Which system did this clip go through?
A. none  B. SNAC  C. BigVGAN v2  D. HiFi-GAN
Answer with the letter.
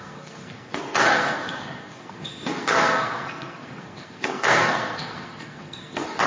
B